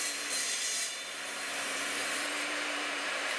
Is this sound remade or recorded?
remade